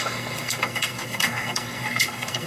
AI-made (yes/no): yes